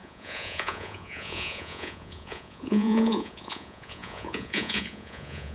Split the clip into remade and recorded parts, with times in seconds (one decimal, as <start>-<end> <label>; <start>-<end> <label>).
0.0-5.5 remade